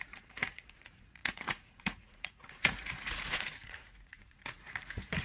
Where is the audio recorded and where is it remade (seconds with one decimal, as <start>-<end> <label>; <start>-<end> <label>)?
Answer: 0.0-5.2 remade